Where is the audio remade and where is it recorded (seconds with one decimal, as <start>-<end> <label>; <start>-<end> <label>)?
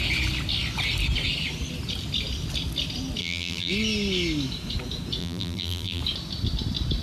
0.0-3.2 recorded; 3.2-3.7 remade; 3.7-5.2 recorded; 5.2-6.0 remade; 6.0-7.0 recorded